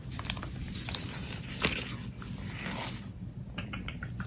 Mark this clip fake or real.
real